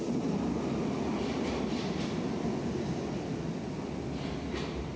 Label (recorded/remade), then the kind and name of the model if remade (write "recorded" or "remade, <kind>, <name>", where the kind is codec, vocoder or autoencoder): recorded